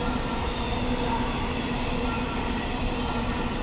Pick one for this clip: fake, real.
real